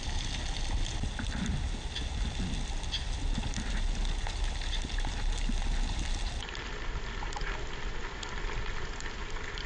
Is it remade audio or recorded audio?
recorded